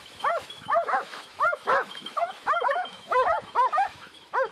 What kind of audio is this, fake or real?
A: fake